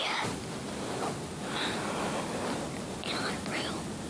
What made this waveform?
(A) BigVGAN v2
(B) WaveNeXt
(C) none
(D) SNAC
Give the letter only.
C